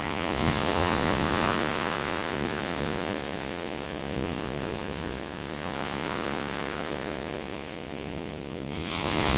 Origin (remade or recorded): remade